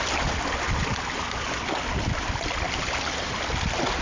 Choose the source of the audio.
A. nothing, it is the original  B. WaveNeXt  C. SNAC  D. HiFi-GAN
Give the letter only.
A